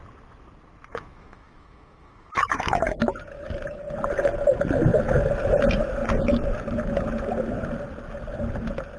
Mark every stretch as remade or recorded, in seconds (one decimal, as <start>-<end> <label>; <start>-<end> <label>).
0.0-0.9 recorded; 0.9-3.0 remade; 3.0-9.0 recorded